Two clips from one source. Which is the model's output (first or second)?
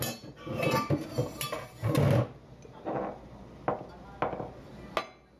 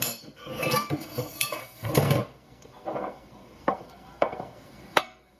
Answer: second